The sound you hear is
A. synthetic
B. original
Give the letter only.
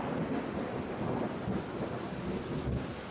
B